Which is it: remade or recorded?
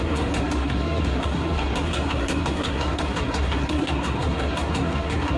remade